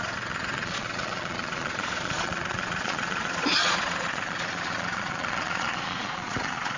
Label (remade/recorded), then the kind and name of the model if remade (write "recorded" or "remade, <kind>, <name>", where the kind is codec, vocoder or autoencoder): remade, vocoder, Vocos